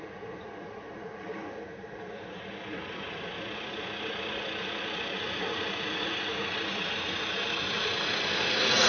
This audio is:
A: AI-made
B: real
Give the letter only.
A